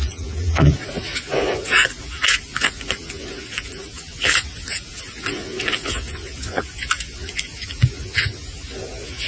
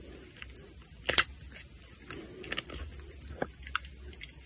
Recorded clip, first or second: second